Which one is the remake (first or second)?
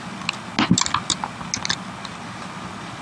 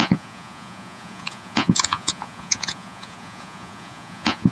second